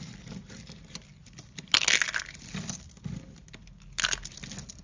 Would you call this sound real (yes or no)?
yes